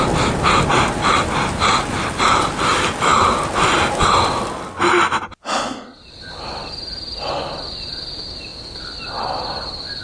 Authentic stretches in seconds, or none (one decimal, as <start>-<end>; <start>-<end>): 0.0-10.0